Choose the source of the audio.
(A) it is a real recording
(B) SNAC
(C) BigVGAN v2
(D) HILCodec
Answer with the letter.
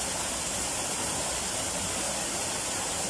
A